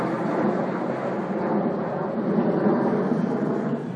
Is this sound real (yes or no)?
yes